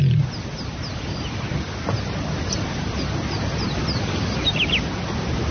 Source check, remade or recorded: recorded